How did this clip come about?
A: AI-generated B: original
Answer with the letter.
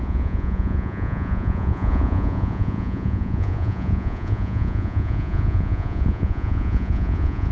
A